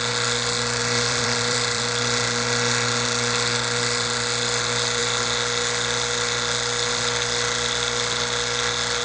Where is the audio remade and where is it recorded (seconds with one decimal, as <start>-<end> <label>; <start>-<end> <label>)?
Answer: 0.0-0.8 recorded; 0.8-1.8 remade; 1.8-9.0 recorded